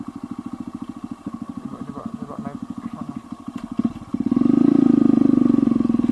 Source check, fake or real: real